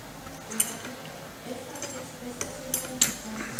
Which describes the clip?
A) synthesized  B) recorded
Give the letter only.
B